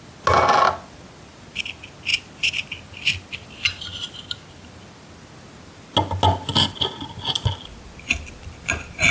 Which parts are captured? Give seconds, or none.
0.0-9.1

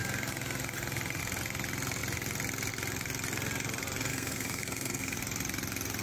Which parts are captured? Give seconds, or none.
0.0-4.1; 5.2-6.0